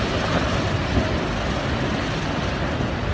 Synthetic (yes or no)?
no